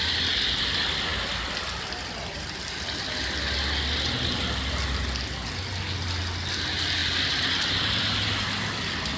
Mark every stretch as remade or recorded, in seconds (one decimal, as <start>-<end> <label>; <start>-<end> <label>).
0.0-1.1 recorded; 1.1-1.9 remade; 1.9-7.0 recorded; 7.0-8.0 remade; 8.0-9.2 recorded